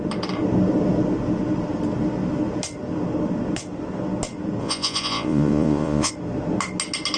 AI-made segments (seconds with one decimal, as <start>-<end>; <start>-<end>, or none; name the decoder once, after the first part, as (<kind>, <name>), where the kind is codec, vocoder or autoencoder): 4.6-6.1 (vocoder, Vocos)